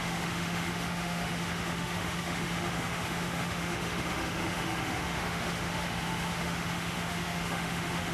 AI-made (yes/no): yes